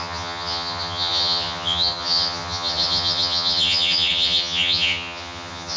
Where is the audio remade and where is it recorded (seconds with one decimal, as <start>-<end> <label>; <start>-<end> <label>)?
0.0-5.8 remade